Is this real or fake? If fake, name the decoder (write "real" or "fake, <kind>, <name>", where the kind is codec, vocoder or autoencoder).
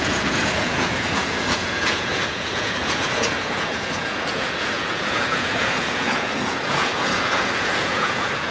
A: fake, vocoder, Vocos